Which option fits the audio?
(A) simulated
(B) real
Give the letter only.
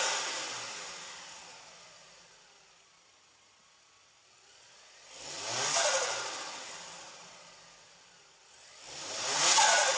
B